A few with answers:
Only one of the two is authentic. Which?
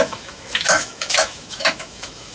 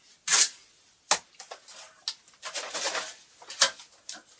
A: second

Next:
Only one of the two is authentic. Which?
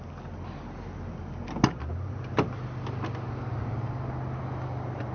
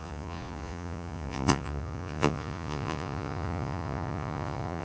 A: first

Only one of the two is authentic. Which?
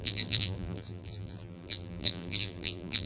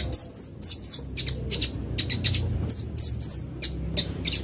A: second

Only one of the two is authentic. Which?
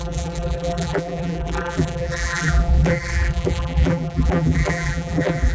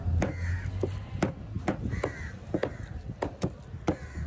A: second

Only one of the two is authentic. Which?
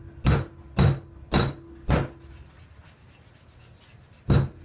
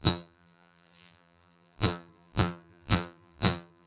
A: first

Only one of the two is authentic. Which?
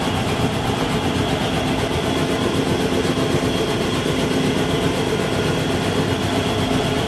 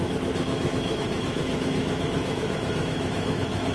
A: first